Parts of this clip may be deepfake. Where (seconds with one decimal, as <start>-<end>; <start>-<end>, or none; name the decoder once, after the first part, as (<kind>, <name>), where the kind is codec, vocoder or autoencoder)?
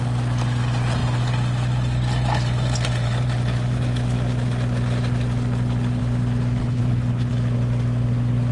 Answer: 6.6-7.3 (codec, HILCodec)